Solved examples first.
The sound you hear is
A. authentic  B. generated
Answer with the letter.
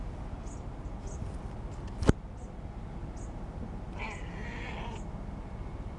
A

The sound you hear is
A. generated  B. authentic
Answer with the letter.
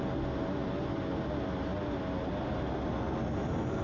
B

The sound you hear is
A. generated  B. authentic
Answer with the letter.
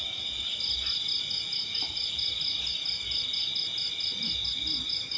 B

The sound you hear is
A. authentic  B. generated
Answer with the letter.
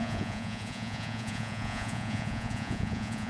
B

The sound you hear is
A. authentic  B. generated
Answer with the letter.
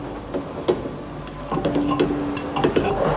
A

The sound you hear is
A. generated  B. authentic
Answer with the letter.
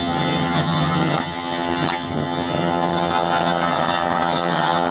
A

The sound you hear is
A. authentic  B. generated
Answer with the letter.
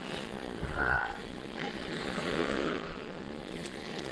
B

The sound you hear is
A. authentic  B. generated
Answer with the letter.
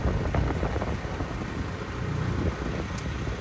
A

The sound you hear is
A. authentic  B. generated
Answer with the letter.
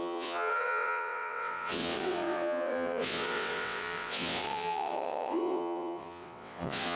B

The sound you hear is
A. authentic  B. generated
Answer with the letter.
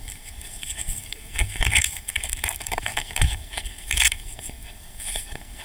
B